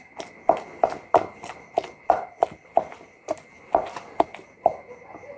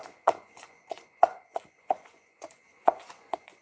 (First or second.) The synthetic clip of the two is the second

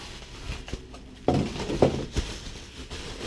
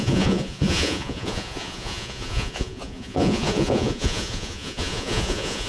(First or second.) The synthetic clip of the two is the second